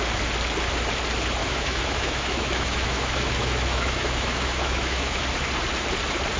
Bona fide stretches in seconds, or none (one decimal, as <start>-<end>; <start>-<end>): 0.0-1.4; 5.2-6.4